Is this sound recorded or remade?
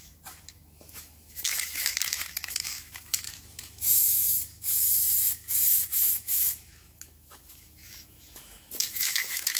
remade